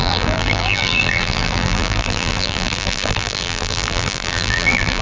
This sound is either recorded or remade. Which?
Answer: remade